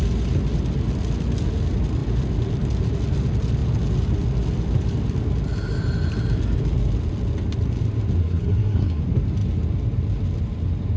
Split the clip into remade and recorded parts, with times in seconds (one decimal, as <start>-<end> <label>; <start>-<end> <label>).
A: 0.0-8.2 recorded; 8.2-9.0 remade; 9.0-11.0 recorded